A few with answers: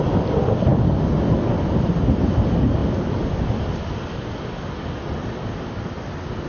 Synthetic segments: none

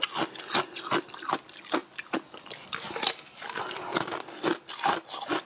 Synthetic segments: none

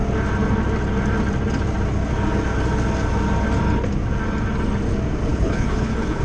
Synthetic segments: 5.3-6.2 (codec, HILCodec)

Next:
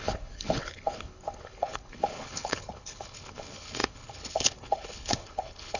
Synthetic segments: 0.0-5.8 (codec, HILCodec)

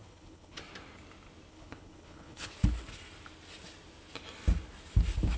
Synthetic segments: 0.0-0.6 (codec, HILCodec); 1.5-2.5

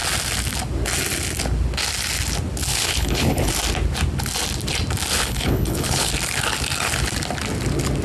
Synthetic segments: 2.7-3.5 (codec, HILCodec); 5.1-6.1

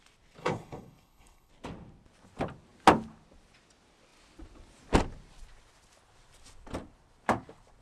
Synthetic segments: 0.4-1.5 (codec, HILCodec)

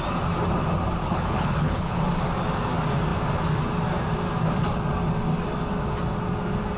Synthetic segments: 1.0-2.0 (codec, HILCodec)